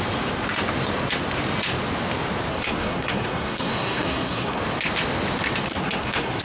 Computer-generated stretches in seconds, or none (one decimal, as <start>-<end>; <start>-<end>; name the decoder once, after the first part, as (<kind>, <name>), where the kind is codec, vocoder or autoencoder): 2.5-4.6 (codec, SNAC); 5.8-6.4